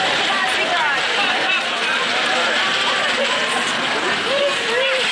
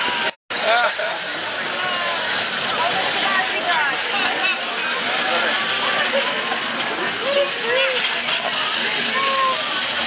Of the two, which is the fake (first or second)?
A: first